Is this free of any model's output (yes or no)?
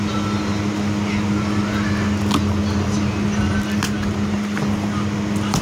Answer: yes